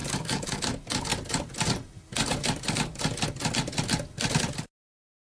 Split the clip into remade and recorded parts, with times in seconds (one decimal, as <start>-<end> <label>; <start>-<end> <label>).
0.0-0.6 remade; 0.6-5.2 recorded

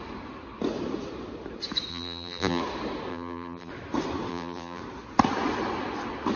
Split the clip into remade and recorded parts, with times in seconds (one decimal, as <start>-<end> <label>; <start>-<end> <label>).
0.0-1.9 recorded; 1.9-2.6 remade; 2.6-3.1 recorded; 3.1-3.7 remade; 3.7-4.3 recorded; 4.3-4.8 remade; 4.8-6.4 recorded

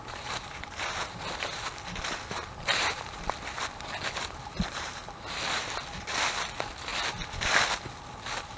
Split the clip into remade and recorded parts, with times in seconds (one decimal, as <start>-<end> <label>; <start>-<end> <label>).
0.0-6.9 recorded; 6.9-7.7 remade; 7.7-8.6 recorded

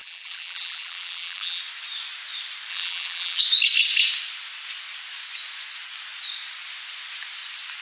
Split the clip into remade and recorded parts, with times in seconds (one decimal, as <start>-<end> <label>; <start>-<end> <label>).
0.0-1.6 remade; 1.6-2.7 recorded; 2.7-3.4 remade; 3.4-7.8 recorded

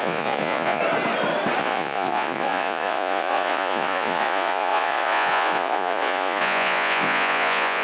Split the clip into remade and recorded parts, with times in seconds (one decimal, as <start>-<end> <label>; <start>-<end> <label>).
0.0-0.8 remade; 0.8-1.6 recorded; 1.6-7.8 remade